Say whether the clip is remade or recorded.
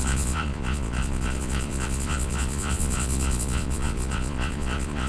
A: remade